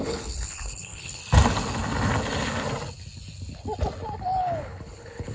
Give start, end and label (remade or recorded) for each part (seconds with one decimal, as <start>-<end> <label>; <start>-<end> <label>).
0.0-1.2 remade; 1.2-4.2 recorded; 4.2-5.3 remade